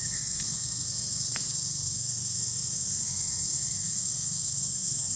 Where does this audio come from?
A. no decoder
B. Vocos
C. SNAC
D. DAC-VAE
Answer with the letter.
C